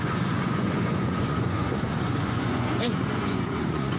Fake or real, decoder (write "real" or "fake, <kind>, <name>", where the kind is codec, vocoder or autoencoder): fake, vocoder, Vocos